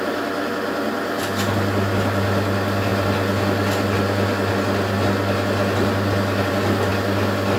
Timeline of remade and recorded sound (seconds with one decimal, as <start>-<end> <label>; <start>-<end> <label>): 0.0-7.6 recorded